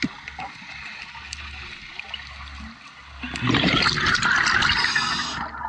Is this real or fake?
real